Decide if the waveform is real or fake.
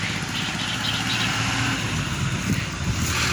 real